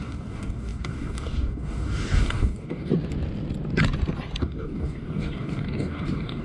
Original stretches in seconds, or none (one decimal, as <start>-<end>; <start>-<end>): 2.9-4.4